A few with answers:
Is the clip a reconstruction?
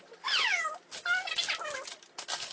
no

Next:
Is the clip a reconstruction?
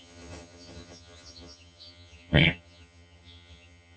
yes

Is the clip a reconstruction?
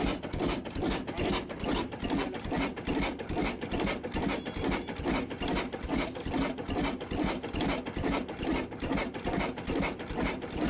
no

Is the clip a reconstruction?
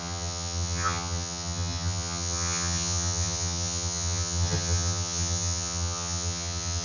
yes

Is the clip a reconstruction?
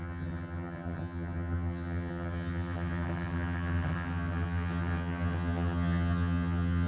yes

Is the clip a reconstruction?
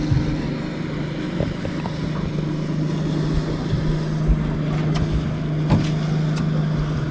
no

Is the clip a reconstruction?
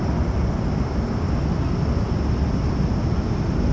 no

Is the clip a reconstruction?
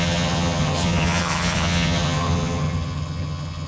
yes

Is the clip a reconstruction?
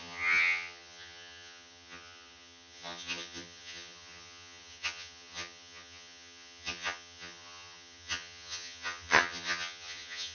yes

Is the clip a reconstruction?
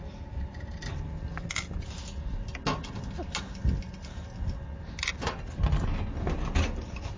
no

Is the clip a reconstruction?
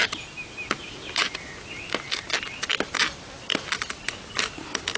no